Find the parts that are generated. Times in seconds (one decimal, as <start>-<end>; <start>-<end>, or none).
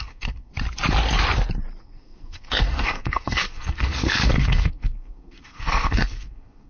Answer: 0.0-0.5; 1.8-6.7